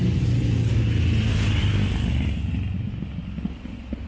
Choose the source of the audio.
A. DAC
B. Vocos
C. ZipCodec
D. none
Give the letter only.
D